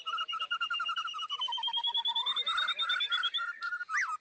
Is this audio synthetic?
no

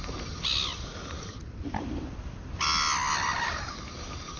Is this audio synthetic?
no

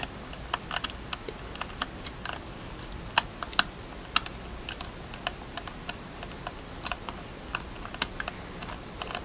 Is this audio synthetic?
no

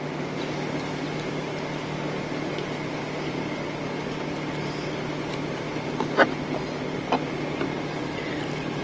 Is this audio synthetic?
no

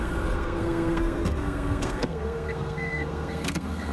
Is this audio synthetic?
yes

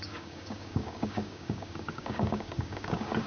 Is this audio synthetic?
yes